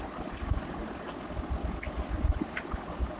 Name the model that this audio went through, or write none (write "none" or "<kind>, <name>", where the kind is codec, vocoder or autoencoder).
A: none